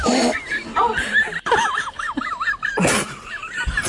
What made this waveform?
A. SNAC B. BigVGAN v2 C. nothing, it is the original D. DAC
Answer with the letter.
C